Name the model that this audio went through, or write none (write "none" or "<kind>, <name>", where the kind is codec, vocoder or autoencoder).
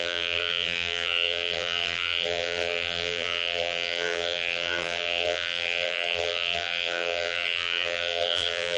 vocoder, BigVGAN v2